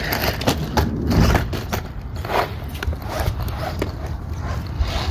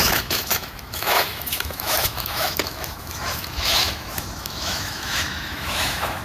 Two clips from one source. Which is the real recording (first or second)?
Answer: first